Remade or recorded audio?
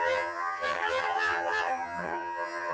remade